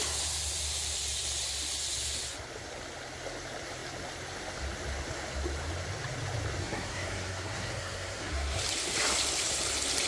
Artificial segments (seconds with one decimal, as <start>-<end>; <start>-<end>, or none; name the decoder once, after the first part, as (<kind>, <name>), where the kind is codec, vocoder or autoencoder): 6.6-8.6 (codec, SNAC)